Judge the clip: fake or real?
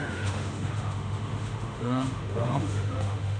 fake